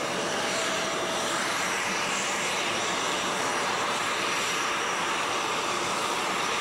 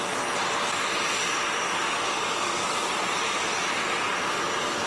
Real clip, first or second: second